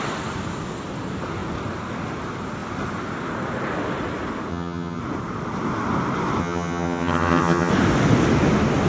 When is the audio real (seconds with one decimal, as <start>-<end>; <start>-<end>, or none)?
0.0-4.5; 5.0-6.4; 7.7-8.9